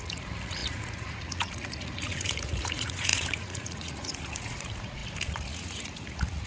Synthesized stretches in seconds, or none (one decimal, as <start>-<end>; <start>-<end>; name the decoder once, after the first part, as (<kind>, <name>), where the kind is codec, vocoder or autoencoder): 0.0-6.5 (vocoder, Vocos)